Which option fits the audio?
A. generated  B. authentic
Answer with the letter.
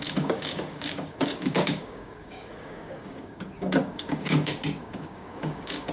A